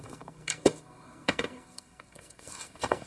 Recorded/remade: remade